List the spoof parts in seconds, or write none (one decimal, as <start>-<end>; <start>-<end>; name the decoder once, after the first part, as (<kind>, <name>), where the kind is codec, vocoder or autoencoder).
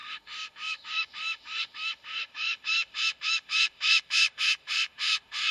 0.0-5.5 (autoencoder, DAC-VAE)